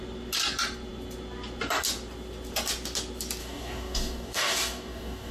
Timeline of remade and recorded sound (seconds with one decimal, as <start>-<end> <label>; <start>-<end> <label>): 0.0-3.4 recorded; 3.4-5.3 remade